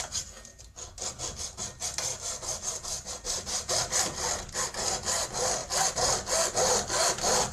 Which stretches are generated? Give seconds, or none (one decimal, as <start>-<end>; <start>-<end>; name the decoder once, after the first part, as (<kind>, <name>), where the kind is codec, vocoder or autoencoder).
none